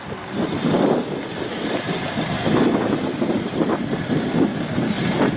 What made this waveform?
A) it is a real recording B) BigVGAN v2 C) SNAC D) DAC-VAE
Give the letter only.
A